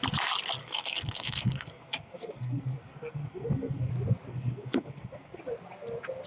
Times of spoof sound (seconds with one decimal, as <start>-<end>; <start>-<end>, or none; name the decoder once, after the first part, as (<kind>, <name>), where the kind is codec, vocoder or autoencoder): 0.6-3.9 (codec, SNAC); 4.3-5.4